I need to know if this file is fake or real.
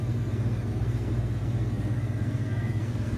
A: fake